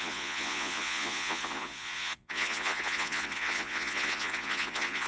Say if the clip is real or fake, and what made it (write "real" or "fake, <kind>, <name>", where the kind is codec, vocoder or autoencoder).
fake, vocoder, Vocos